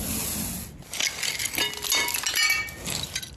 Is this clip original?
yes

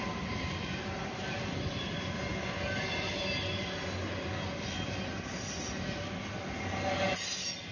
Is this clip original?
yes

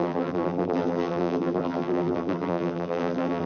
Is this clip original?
no